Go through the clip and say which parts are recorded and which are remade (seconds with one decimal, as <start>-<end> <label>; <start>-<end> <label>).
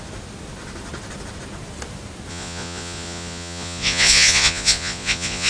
0.0-2.3 recorded; 2.3-5.5 remade